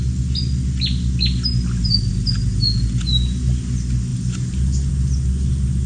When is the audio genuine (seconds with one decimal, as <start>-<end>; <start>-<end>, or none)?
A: 0.0-5.9